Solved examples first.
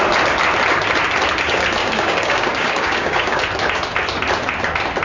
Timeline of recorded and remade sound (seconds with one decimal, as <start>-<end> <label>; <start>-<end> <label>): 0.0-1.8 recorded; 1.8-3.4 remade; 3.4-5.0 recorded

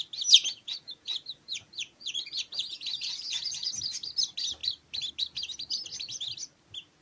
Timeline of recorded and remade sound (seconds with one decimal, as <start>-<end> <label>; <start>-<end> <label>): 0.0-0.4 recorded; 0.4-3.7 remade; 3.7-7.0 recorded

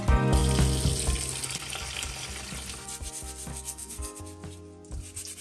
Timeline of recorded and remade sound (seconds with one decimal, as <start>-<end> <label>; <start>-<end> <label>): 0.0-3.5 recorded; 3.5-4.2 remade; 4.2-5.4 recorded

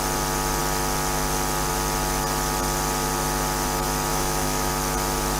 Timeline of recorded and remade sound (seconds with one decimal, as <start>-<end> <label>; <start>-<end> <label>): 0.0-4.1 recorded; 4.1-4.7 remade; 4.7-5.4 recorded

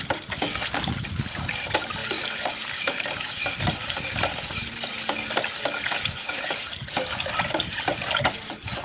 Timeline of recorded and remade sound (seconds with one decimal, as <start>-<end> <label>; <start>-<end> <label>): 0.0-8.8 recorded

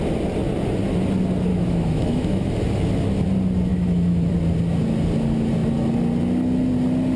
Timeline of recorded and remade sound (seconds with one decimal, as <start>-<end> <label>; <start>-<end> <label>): 0.0-1.5 recorded; 1.5-2.5 remade; 2.5-3.7 recorded; 3.7-4.3 remade; 4.3-7.2 recorded